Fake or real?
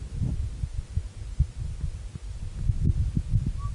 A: real